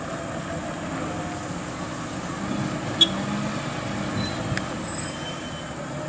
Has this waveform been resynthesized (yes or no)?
no